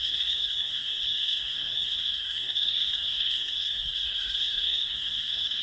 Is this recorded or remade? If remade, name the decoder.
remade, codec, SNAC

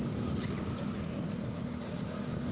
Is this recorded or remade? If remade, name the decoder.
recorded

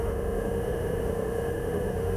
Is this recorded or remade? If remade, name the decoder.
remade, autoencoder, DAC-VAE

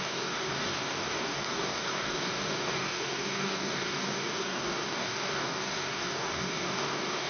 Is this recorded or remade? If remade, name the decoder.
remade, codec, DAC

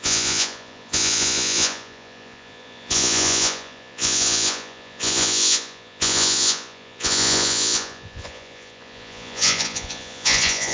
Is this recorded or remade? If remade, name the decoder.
remade, vocoder, Vocos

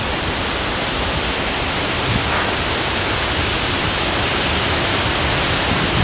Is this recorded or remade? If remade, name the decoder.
recorded